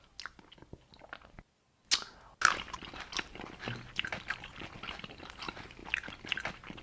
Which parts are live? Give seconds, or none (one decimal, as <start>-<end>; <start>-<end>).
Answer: 0.0-6.8